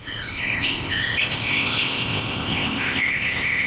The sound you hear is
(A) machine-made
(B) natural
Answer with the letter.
A